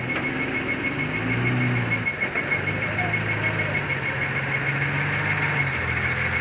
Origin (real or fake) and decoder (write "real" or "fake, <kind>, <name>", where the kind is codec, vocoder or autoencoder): real